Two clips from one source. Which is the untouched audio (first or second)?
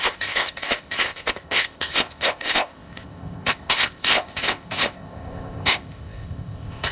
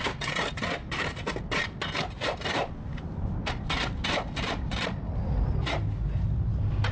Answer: second